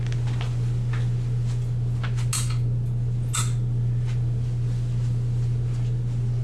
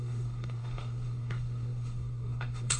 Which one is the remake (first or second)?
second